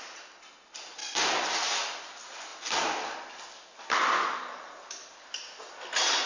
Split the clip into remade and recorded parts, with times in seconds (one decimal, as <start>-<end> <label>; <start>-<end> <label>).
0.0-6.3 recorded